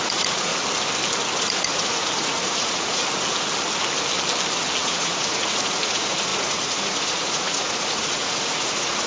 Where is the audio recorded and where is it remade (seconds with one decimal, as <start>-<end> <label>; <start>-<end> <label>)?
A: 0.0-0.5 remade; 0.5-1.4 recorded; 1.4-3.0 remade; 3.0-4.8 recorded; 4.8-9.1 remade